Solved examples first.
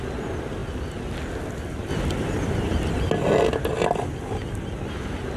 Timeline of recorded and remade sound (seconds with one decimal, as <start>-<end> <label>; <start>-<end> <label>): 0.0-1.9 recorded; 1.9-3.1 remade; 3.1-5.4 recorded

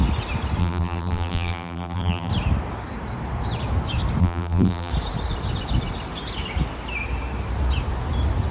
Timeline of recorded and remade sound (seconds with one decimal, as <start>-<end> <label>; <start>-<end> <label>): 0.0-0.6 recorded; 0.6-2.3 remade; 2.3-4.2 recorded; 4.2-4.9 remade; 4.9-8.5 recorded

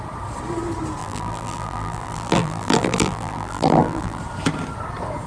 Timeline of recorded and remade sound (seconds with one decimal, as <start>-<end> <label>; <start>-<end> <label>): 0.0-1.0 recorded; 1.0-4.2 remade; 4.2-5.3 recorded

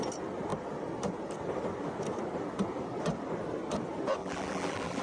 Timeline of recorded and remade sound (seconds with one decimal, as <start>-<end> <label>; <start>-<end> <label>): 0.0-4.2 recorded; 4.2-5.0 remade